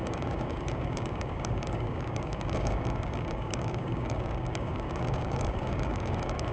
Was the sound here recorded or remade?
remade